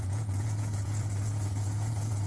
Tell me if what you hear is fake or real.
fake